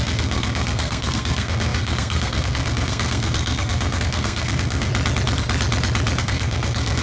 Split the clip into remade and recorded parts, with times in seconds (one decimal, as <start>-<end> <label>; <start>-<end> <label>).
0.0-4.9 remade; 4.9-6.2 recorded; 6.2-7.0 remade